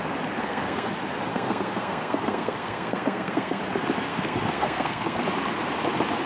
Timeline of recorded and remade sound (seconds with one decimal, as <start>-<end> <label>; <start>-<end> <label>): 0.0-0.4 recorded; 0.4-0.9 remade; 0.9-1.3 recorded; 1.3-3.6 remade; 3.6-4.1 recorded; 4.1-5.2 remade; 5.2-6.3 recorded